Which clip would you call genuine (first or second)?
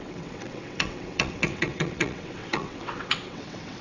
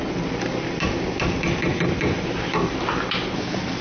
second